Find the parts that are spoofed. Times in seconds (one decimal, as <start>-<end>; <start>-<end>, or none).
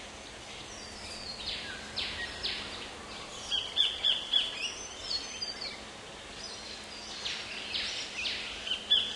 none